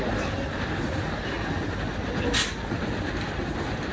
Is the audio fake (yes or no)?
no